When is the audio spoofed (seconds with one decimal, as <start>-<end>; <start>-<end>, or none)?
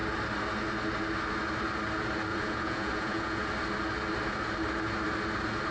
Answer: 2.3-3.5